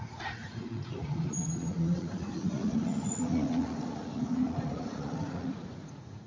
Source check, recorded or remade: remade